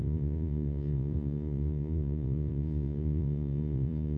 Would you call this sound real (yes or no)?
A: no